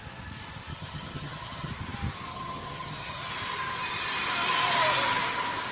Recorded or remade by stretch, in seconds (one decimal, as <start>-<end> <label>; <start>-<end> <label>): 0.0-0.7 recorded; 0.7-1.7 remade; 1.7-2.3 recorded; 2.3-3.3 remade; 3.3-5.7 recorded